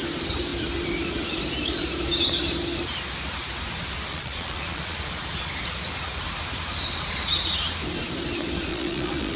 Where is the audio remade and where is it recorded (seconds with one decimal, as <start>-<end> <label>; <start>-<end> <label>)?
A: 0.0-4.1 recorded; 4.1-5.0 remade; 5.0-8.7 recorded; 8.7-9.4 remade